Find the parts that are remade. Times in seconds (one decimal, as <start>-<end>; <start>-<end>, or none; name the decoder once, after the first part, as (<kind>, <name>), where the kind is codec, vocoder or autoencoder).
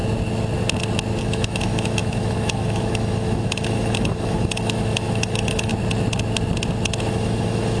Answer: 1.2-5.7 (autoencoder, DAC-VAE); 7.1-7.8